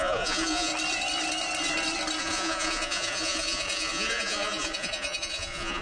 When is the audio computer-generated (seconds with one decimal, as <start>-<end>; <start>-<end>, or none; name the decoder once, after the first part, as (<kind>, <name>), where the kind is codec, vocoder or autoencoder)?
0.0-0.7 (vocoder, Vocos); 2.2-5.8